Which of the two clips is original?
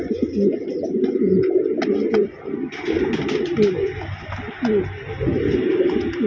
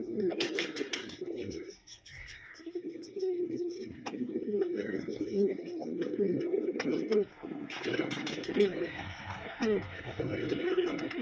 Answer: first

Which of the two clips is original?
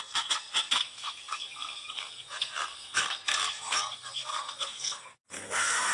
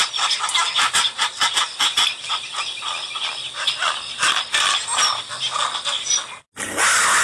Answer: second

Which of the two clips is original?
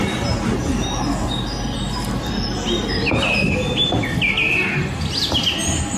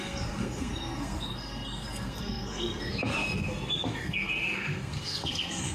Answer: first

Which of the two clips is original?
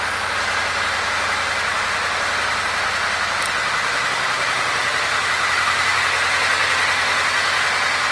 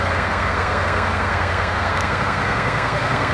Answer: first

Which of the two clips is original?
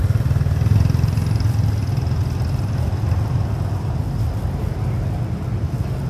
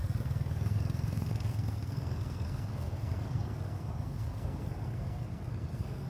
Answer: first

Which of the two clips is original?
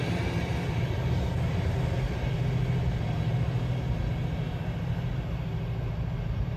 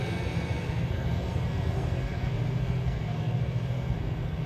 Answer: first